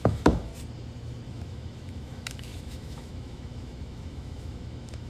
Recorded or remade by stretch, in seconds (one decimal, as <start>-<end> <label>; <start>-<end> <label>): 0.0-0.5 remade; 0.5-1.3 recorded; 1.3-5.1 remade